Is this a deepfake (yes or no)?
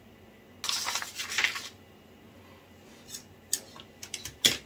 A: no